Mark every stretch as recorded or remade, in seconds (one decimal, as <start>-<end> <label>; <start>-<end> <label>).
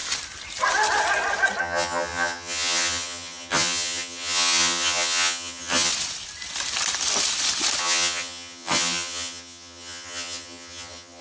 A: 0.0-1.6 recorded; 1.6-5.9 remade; 5.9-7.8 recorded; 7.8-11.2 remade